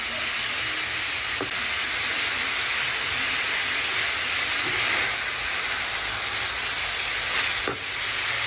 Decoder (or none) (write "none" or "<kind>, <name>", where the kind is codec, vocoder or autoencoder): none